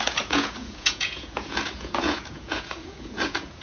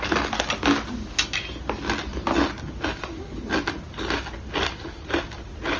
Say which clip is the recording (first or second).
second